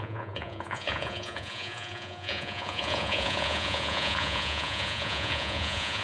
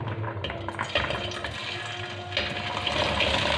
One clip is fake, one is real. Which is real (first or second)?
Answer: second